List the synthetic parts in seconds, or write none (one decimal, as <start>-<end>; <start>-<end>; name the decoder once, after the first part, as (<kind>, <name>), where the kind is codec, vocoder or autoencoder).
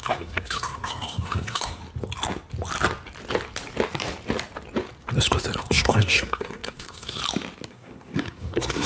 0.0-1.8 (codec, SNAC); 5.6-7.2; 7.7-8.9